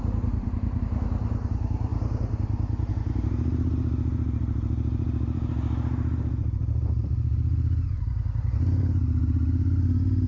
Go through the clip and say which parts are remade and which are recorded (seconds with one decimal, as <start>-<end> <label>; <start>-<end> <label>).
0.0-10.3 remade